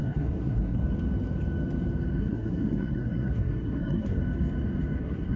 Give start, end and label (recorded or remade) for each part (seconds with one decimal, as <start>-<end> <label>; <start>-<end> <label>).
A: 0.0-0.8 remade; 0.8-2.2 recorded; 2.2-4.2 remade; 4.2-5.0 recorded; 5.0-5.4 remade